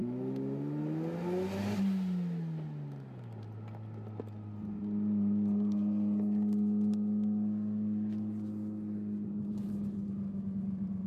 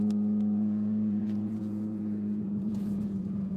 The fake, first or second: second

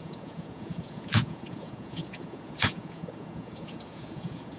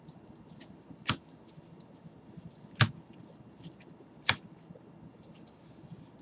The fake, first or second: first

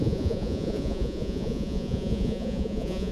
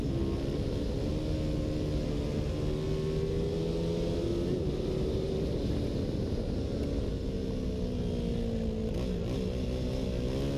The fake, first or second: first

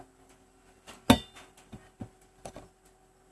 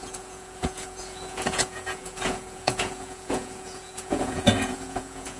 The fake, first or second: second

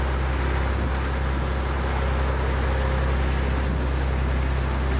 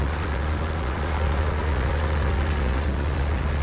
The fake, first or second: second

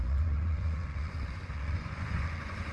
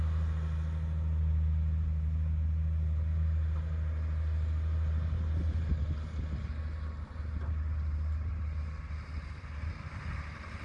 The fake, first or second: first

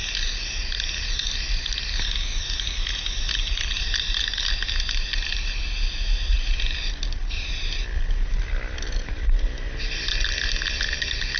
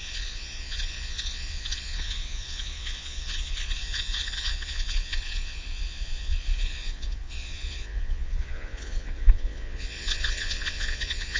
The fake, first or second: second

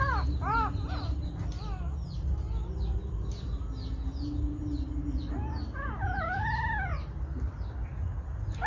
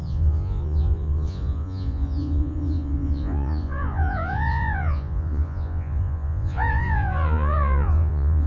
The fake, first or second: second